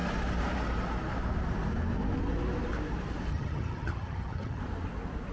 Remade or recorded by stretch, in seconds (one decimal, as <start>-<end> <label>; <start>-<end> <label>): 0.0-3.3 recorded; 3.3-4.6 remade; 4.6-5.3 recorded